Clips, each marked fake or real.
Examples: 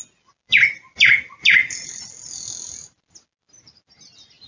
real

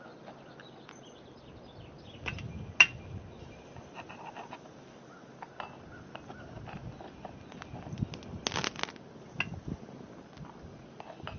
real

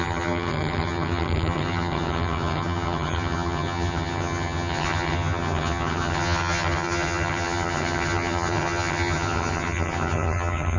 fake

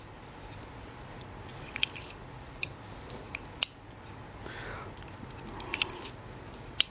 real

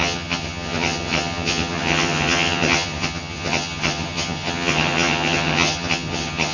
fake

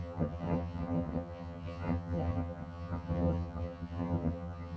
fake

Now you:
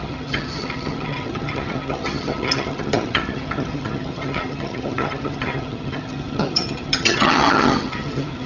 fake